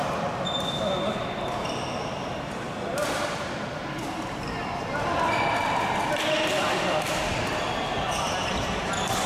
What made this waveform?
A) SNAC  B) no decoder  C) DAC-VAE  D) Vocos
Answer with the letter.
B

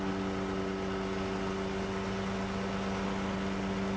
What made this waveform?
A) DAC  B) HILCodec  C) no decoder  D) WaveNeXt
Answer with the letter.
C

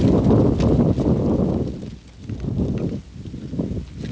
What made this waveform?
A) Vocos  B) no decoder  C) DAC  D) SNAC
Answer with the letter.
B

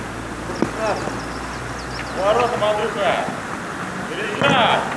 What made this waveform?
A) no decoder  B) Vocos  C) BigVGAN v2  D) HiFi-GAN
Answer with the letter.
A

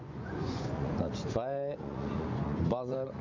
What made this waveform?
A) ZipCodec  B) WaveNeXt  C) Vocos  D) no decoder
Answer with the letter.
C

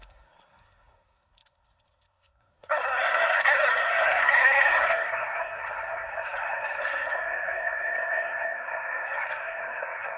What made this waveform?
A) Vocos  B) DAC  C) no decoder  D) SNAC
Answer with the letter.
D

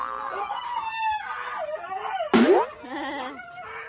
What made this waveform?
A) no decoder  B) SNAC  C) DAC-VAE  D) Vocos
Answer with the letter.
A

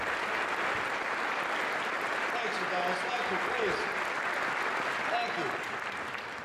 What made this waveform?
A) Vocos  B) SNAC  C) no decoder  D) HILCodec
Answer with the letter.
C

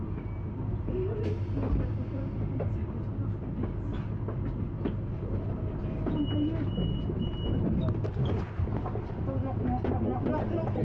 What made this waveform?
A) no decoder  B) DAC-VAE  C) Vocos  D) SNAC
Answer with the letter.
A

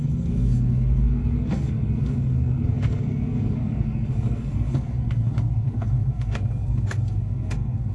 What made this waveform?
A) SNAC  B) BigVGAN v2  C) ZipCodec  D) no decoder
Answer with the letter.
A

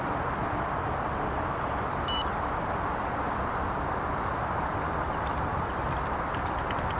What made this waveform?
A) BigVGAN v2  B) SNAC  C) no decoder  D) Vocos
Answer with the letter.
C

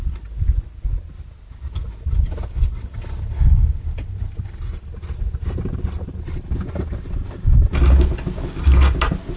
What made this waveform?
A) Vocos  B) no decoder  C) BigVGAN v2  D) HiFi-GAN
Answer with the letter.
B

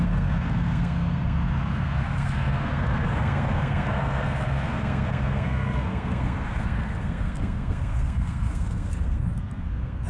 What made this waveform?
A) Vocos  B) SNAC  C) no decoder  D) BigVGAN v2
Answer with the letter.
B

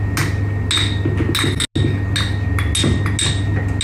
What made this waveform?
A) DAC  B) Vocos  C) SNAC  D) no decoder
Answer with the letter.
D